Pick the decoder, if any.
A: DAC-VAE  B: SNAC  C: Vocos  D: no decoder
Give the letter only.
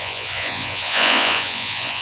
C